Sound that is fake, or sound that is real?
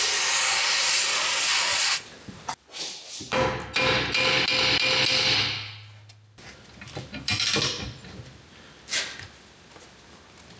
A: real